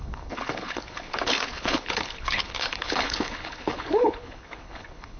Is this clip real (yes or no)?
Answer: no